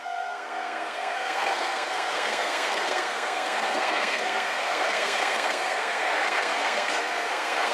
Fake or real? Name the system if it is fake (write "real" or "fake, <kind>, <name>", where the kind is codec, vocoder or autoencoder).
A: fake, codec, SNAC